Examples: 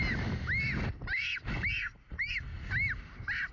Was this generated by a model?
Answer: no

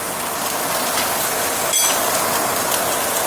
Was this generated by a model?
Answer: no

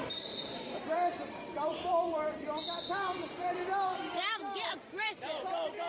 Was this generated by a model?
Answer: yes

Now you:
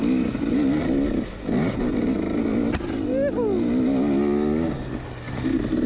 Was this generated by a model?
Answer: no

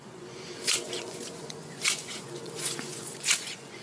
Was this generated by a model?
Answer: yes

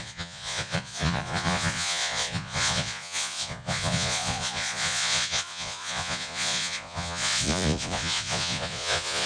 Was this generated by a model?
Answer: yes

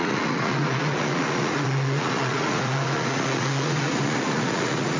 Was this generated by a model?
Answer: yes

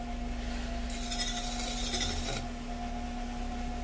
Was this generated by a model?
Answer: no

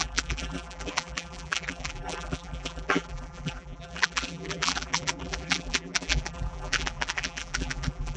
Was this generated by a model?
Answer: yes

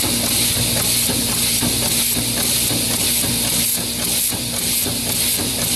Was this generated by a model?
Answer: no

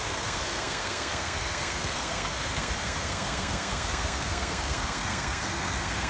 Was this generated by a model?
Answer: yes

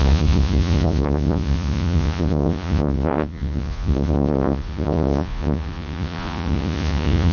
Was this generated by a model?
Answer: yes